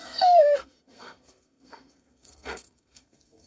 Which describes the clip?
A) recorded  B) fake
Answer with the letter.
B